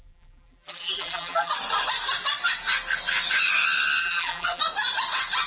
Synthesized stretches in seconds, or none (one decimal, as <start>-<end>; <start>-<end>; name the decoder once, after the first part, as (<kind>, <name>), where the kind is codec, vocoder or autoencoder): 0.0-1.5 (vocoder, BigVGAN v2); 4.0-4.6